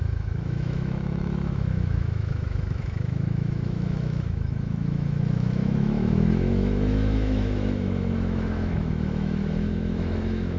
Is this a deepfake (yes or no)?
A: yes